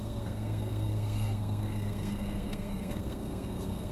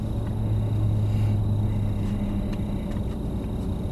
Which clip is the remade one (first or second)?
first